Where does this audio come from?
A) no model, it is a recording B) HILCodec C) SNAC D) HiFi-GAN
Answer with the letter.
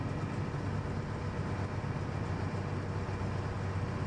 A